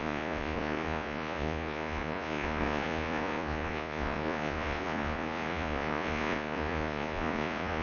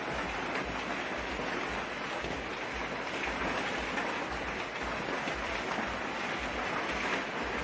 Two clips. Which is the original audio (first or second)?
second